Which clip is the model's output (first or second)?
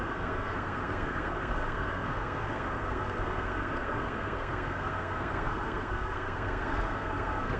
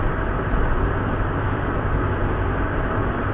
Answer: first